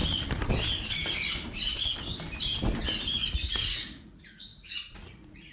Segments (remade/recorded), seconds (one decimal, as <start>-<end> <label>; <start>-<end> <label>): 0.0-3.3 recorded; 3.3-5.5 remade